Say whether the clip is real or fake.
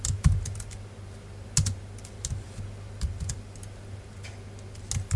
real